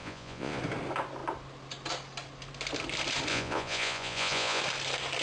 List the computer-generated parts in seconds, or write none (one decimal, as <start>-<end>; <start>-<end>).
0.0-0.6; 3.3-4.6